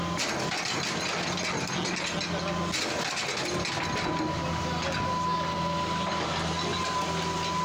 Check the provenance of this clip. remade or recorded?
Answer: recorded